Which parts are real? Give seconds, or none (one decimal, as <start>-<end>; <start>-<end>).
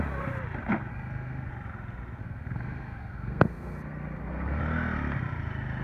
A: 0.0-0.9; 1.5-2.2; 4.6-5.8